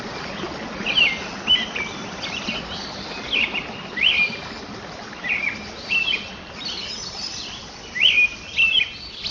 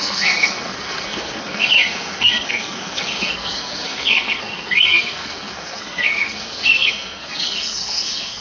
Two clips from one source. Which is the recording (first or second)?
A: first